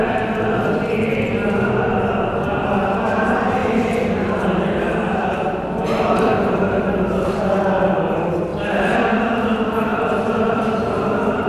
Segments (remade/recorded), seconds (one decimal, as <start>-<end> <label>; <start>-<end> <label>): 0.0-3.6 recorded; 3.6-7.4 remade; 7.4-8.5 recorded; 8.5-9.0 remade; 9.0-9.9 recorded; 9.9-10.8 remade; 10.8-11.5 recorded